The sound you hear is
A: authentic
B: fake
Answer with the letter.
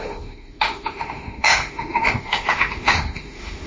B